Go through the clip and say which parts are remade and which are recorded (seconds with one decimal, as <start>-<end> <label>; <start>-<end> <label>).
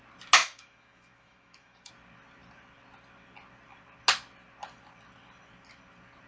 0.0-0.4 recorded; 0.4-1.9 remade; 1.9-6.3 recorded